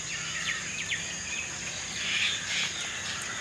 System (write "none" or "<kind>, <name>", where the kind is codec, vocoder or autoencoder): none